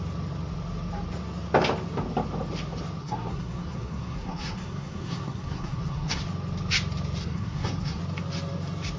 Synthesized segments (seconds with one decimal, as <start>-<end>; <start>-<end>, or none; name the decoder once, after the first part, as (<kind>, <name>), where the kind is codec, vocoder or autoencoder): 3.0-6.2 (codec, SNAC); 7.2-8.0